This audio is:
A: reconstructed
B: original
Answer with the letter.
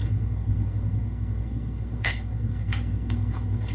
A